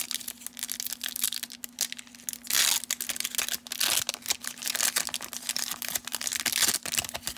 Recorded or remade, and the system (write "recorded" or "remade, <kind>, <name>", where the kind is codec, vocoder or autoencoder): recorded